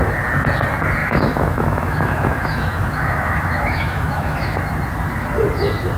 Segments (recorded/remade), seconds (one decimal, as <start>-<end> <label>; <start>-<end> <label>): 0.0-1.0 recorded; 1.0-4.6 remade; 4.6-6.0 recorded